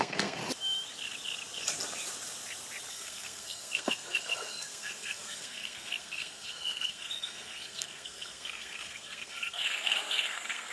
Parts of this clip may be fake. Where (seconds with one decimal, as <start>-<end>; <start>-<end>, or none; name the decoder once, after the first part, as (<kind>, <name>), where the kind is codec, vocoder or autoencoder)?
0.0-0.4 (codec, SNAC); 2.9-10.7